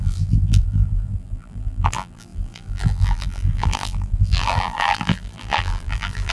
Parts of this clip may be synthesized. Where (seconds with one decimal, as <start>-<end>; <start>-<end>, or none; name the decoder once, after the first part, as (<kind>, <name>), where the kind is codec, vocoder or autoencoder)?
0.0-6.3 (vocoder, BigVGAN v2)